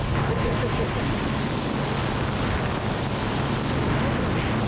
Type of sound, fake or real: real